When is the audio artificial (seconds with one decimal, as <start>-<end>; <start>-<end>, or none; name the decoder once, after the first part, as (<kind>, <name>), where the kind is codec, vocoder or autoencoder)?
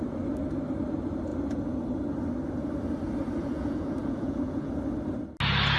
3.4-4.7 (vocoder, Vocos)